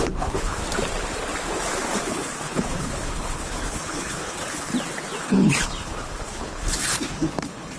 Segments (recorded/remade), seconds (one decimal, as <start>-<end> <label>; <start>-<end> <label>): 0.0-0.6 remade; 0.6-2.0 recorded; 2.0-4.7 remade; 4.7-5.2 recorded; 5.2-7.8 remade